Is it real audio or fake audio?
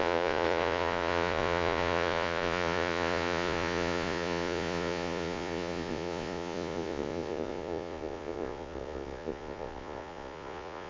fake